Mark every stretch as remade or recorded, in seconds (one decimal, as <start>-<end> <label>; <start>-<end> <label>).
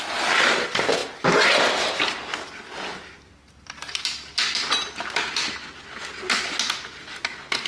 0.0-7.7 recorded